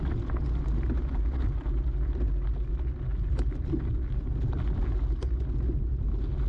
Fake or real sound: real